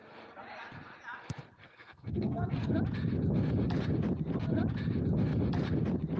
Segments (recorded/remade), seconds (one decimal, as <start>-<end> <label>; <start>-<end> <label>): 0.0-1.6 recorded; 1.6-2.7 remade; 2.7-6.2 recorded